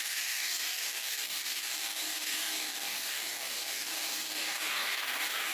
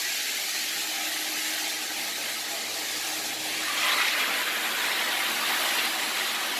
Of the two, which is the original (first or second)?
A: second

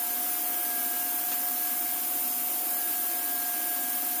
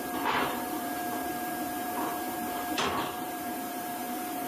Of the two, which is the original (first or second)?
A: first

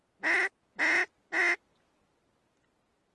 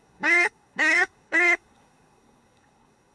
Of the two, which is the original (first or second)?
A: first